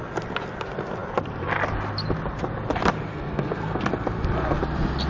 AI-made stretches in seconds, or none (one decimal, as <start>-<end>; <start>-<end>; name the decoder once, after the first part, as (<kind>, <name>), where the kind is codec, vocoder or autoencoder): 3.1-3.8 (codec, SNAC)